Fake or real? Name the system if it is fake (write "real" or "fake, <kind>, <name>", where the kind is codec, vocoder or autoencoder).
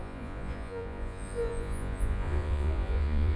fake, vocoder, Vocos